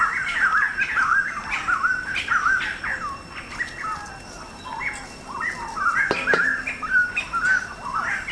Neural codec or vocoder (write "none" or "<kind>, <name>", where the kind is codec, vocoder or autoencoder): none